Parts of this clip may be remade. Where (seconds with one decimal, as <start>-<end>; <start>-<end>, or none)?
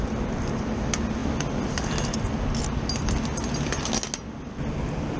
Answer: none